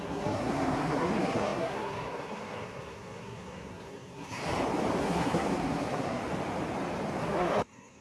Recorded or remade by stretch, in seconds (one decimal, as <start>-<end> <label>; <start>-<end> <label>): 0.0-4.4 remade; 4.4-5.0 recorded; 5.0-6.2 remade; 6.2-7.2 recorded; 7.2-8.0 remade